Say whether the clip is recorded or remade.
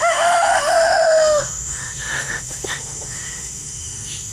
remade